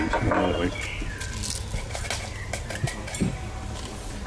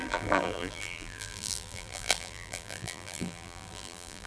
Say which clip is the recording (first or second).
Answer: first